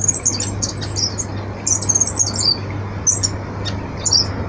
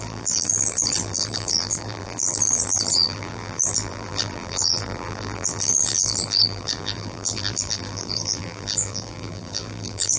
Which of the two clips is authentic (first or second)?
first